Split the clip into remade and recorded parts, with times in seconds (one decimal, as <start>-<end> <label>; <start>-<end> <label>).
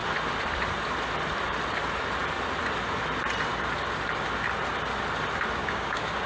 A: 0.0-5.6 recorded; 5.6-6.3 remade